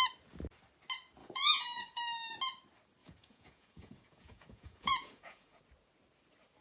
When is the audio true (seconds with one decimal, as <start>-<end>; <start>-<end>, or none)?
0.0-1.2; 2.0-3.0; 5.6-6.6